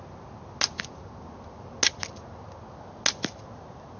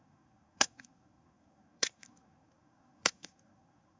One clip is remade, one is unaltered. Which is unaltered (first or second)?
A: first